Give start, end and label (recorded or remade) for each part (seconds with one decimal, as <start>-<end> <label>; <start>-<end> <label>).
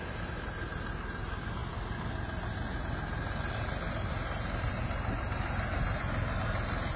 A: 0.0-7.0 recorded